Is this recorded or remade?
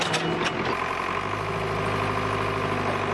recorded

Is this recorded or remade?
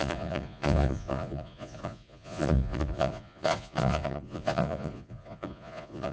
remade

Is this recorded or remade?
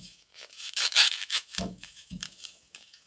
remade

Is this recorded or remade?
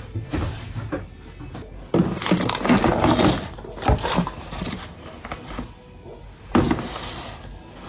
recorded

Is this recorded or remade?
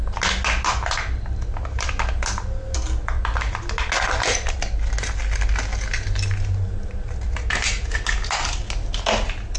recorded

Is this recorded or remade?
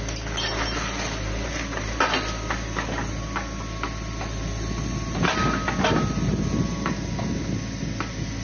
recorded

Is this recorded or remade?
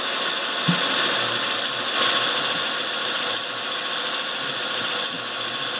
recorded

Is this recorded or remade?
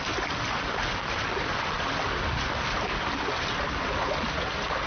recorded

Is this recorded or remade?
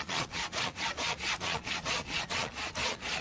remade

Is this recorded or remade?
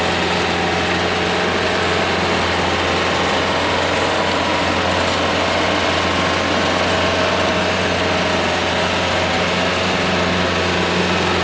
recorded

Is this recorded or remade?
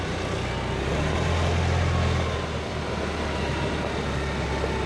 recorded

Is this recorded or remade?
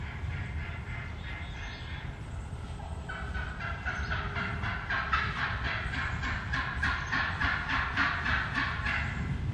recorded